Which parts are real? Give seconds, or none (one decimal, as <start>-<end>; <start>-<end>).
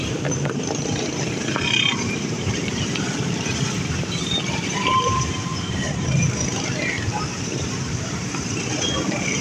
none